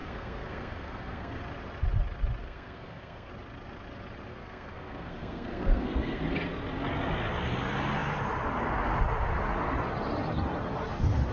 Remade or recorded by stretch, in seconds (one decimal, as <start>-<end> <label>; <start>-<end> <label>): 0.0-1.4 remade; 1.4-2.4 recorded; 2.4-3.3 remade; 3.3-4.3 recorded; 4.3-6.2 remade; 6.2-11.3 recorded